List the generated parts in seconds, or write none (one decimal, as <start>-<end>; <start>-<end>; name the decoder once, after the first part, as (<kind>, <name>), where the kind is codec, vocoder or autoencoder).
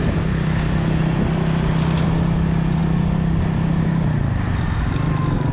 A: none